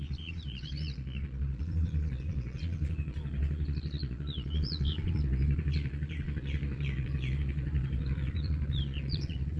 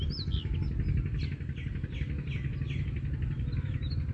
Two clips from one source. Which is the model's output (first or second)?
first